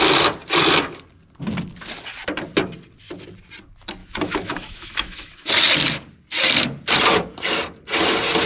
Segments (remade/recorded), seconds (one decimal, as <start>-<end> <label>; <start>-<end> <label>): 0.0-4.0 recorded; 4.0-5.5 remade; 5.5-8.5 recorded